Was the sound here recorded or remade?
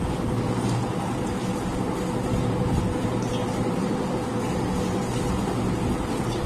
recorded